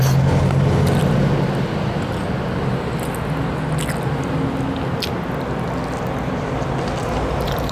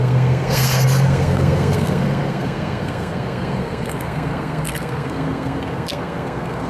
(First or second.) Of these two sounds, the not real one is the second